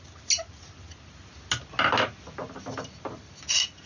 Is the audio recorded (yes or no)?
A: yes